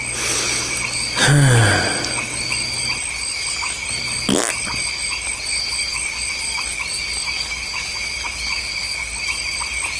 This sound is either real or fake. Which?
real